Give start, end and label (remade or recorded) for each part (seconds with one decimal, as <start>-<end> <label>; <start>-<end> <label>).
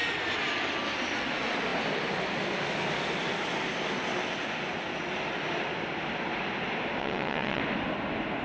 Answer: 0.0-7.0 recorded; 7.0-7.6 remade; 7.6-8.4 recorded